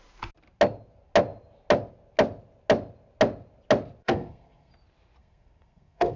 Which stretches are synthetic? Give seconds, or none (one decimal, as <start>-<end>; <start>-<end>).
4.0-4.7; 5.2-6.2

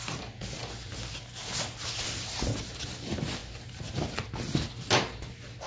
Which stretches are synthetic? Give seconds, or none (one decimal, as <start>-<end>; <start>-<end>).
none

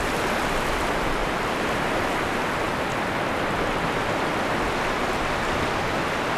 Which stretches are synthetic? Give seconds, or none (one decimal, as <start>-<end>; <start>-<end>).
0.0-6.4

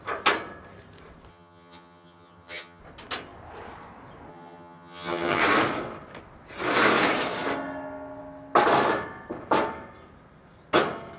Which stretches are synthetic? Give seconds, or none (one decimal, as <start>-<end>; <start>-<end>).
1.3-2.8; 4.3-5.4

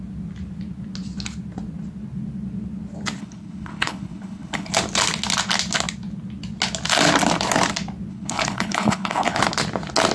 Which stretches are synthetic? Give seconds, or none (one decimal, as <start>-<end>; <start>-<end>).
3.2-4.7; 8.1-9.4

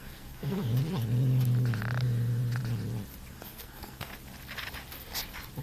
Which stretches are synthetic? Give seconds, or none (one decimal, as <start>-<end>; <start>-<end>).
0.0-0.7; 3.3-4.1

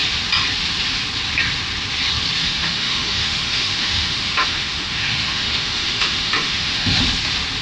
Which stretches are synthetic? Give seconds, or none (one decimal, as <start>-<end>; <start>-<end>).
2.4-7.0